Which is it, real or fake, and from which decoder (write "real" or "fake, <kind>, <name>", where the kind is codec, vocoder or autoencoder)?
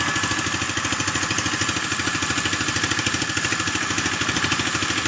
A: real